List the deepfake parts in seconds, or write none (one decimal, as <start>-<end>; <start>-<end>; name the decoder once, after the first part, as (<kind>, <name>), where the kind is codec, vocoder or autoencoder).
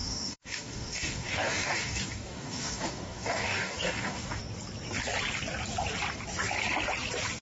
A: 0.0-4.4 (codec, DAC)